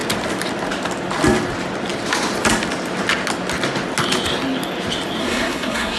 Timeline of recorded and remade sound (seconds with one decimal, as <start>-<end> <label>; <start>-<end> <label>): 0.0-5.2 recorded; 5.2-6.0 remade